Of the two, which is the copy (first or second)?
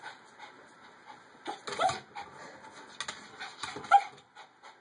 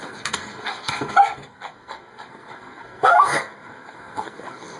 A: second